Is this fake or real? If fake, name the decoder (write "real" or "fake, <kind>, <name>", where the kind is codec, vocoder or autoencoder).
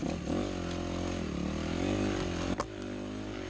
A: real